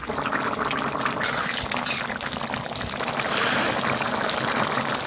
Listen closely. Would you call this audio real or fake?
real